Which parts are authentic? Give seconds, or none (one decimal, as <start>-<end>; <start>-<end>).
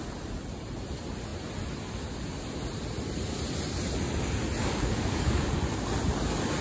0.0-4.6; 5.6-6.6